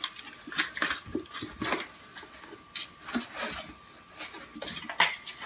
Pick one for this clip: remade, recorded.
recorded